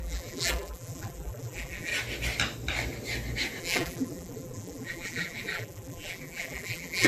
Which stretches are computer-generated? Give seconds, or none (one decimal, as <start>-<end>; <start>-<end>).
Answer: 0.0-1.9; 3.6-7.1